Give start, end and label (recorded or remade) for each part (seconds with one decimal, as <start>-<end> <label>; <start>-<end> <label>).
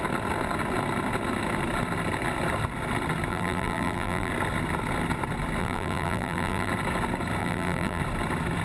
0.0-3.3 recorded; 3.3-4.3 remade; 4.3-5.6 recorded; 5.6-6.7 remade; 6.7-7.4 recorded; 7.4-8.0 remade; 8.0-8.6 recorded